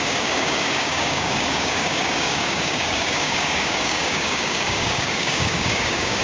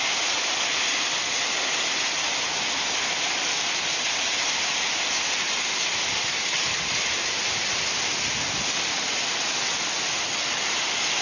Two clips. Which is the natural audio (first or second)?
second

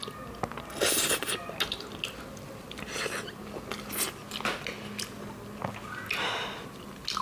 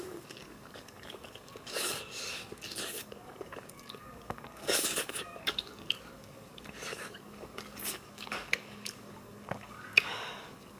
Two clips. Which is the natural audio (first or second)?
first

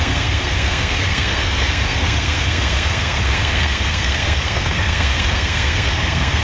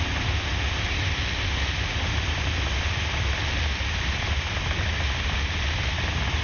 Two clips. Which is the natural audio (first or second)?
second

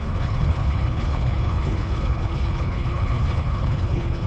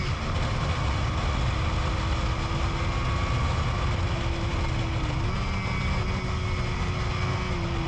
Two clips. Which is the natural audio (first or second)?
second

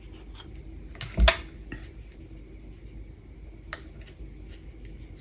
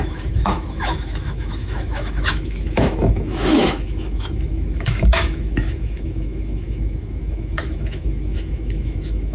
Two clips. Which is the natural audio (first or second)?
first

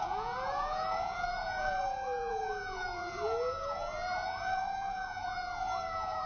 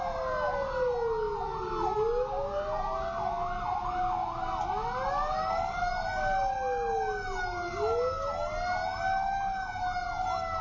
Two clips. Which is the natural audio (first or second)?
second